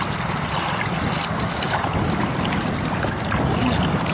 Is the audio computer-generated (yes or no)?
no